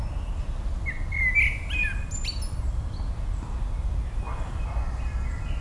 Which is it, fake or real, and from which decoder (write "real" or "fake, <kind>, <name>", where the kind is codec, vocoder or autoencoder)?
real